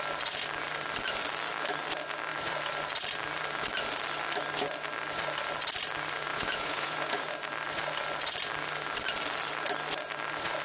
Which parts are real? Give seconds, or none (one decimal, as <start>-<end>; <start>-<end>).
0.0-6.3; 7.3-10.6